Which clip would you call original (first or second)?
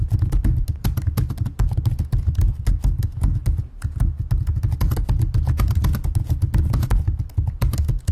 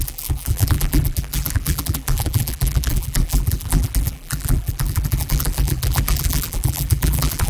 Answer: first